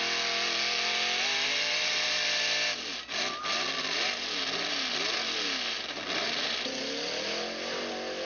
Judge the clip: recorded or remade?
recorded